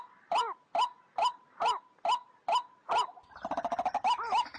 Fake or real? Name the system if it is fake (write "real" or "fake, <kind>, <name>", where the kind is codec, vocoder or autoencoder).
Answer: real